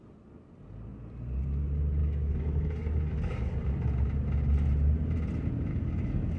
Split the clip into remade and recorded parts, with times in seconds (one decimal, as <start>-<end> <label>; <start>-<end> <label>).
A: 0.0-2.0 recorded; 2.0-3.7 remade; 3.7-5.7 recorded; 5.7-6.4 remade